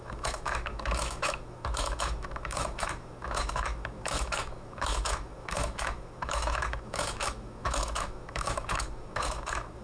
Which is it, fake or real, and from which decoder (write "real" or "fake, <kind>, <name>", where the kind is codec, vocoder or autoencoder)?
fake, autoencoder, DAC-VAE